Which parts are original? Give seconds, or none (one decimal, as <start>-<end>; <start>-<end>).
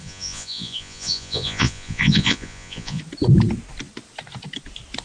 3.0-5.0